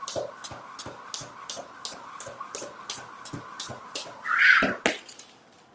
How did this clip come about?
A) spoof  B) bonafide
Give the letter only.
B